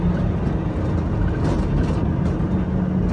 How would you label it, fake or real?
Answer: real